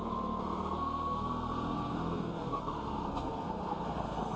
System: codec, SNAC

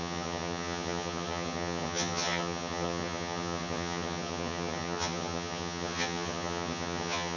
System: vocoder, HiFi-GAN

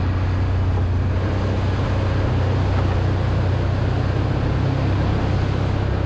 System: none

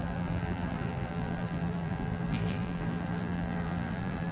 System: vocoder, BigVGAN v2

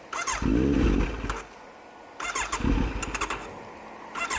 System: none